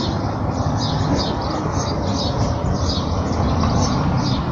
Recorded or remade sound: recorded